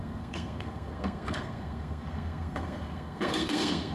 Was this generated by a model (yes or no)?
yes